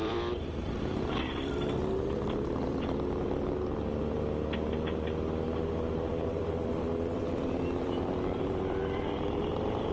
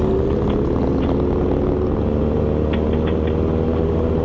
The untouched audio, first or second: second